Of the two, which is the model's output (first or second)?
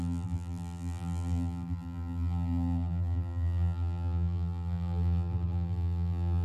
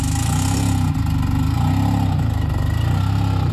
first